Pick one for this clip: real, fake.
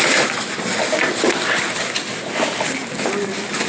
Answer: real